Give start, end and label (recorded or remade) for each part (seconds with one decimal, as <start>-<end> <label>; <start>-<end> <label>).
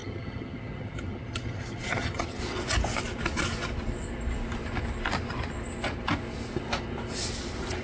0.0-2.4 remade; 2.4-7.8 recorded